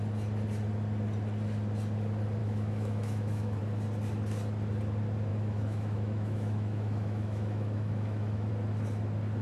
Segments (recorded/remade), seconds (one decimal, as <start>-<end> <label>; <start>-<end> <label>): 0.0-2.4 recorded; 2.4-3.6 remade; 3.6-5.3 recorded; 5.3-8.5 remade; 8.5-9.4 recorded